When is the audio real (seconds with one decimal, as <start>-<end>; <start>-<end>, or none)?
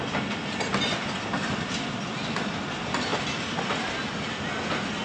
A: 0.0-5.0